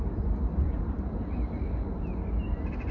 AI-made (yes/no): no